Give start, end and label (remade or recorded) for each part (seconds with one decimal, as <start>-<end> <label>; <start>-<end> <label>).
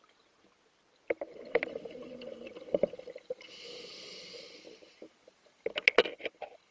0.0-6.7 recorded